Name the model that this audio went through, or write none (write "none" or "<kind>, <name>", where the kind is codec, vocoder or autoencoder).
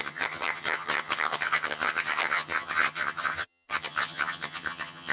vocoder, HiFi-GAN